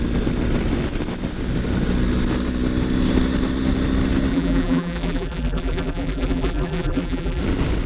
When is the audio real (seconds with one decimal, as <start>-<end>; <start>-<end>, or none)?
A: 0.0-4.3; 7.4-7.9